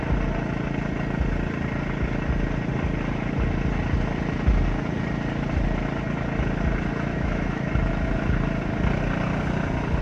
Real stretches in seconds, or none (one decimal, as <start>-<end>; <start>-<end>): 0.0-7.1; 7.7-10.0